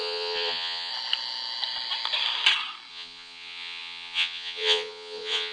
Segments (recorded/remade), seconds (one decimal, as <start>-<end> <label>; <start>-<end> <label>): 0.0-0.9 remade; 0.9-2.9 recorded; 2.9-5.5 remade